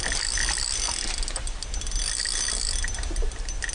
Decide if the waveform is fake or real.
real